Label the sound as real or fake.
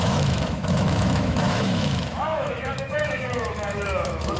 fake